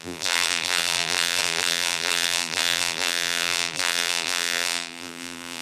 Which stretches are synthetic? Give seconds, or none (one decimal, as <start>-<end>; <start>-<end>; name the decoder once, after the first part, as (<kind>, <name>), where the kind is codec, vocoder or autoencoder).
0.0-5.6 (vocoder, BigVGAN v2)